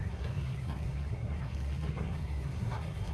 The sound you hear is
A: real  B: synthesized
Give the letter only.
B